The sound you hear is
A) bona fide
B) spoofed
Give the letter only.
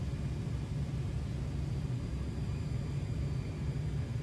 A